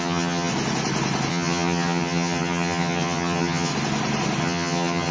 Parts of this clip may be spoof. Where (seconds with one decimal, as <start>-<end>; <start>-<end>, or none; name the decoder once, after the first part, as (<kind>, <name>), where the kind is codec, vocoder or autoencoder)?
0.0-0.5 (vocoder, HiFi-GAN); 1.3-3.7; 4.4-5.1